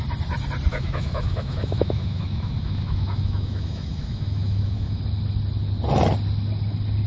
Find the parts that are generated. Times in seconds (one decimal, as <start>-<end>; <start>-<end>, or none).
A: 0.7-5.0